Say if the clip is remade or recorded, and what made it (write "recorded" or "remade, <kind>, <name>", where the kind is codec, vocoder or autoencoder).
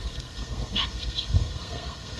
remade, codec, SNAC